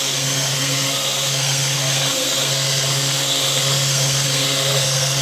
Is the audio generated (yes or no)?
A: yes